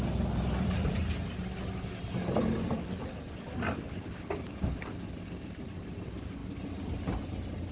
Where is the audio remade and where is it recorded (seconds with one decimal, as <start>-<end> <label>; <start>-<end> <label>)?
0.0-7.7 recorded